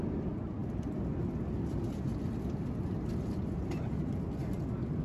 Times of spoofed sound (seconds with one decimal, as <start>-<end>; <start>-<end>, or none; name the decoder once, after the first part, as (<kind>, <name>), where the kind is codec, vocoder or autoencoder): none